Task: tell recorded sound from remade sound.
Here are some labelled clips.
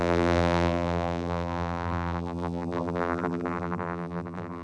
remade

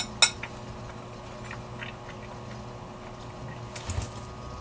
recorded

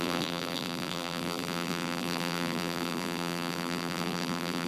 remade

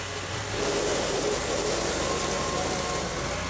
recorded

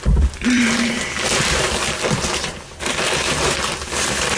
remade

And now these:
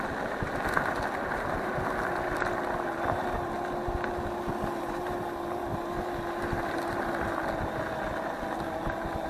recorded